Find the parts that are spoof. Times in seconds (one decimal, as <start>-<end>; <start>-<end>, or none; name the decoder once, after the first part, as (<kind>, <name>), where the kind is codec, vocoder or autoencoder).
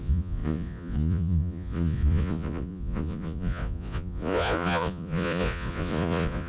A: 0.0-6.5 (vocoder, Vocos)